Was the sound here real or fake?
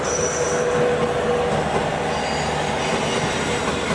real